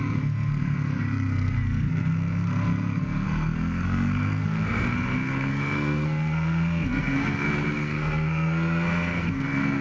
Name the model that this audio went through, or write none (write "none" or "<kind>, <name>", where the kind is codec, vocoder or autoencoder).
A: codec, SNAC